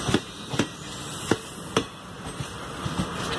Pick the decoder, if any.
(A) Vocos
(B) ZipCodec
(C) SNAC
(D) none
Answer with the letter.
D